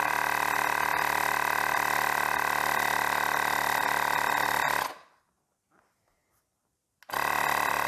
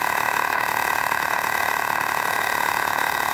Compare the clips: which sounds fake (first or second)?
second